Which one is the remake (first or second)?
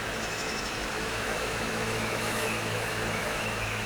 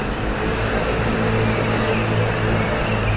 first